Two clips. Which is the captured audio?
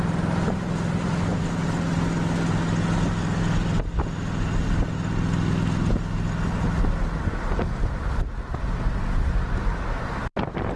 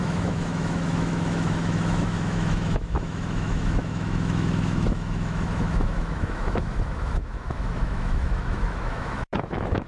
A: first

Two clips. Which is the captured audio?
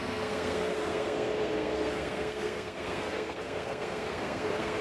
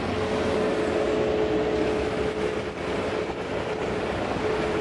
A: second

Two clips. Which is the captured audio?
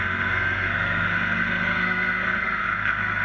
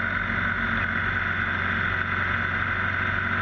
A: second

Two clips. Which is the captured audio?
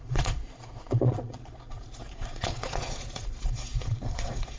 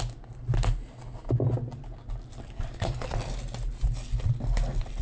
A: second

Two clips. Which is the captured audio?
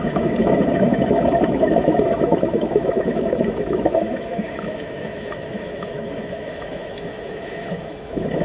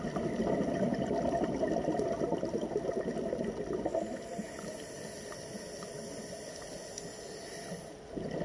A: second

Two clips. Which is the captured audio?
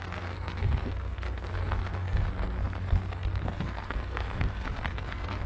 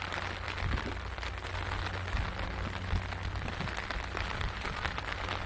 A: second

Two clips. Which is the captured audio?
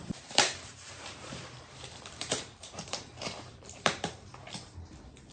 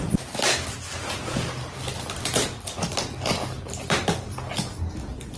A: second